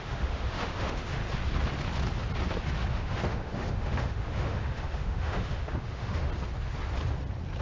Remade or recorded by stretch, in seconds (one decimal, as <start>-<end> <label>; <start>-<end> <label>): 0.0-1.2 remade; 1.2-2.9 recorded; 2.9-6.3 remade; 6.3-7.6 recorded